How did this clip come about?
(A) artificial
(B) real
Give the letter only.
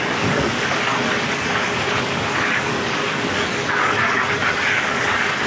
A